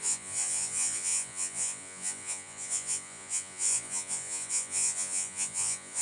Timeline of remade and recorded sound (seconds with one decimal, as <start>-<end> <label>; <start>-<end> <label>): 0.0-6.0 remade